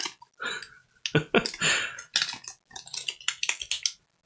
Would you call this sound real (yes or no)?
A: yes